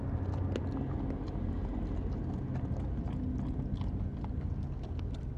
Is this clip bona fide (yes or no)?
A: yes